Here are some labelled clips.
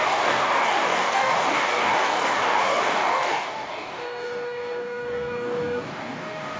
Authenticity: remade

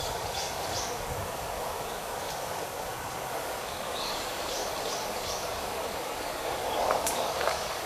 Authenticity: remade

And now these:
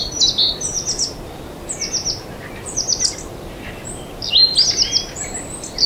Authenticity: recorded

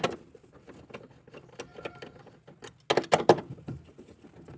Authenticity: recorded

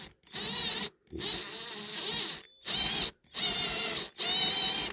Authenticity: recorded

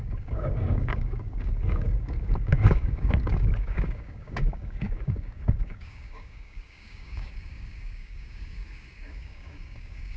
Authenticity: remade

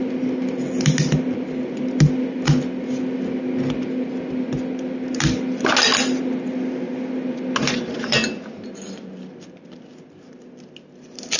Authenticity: recorded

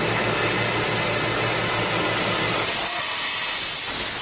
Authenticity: recorded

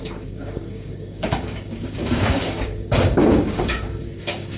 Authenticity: remade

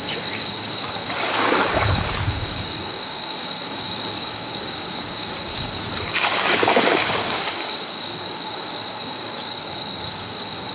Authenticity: remade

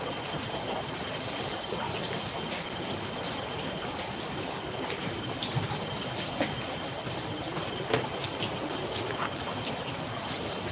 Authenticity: recorded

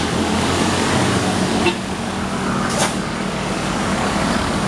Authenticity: remade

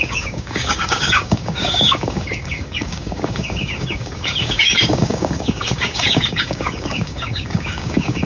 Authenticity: remade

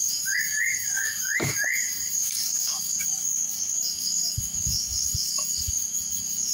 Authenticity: remade